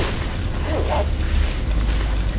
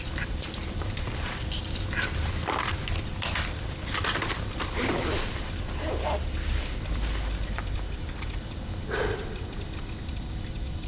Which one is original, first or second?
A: first